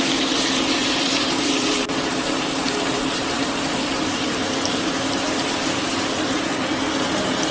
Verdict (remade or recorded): remade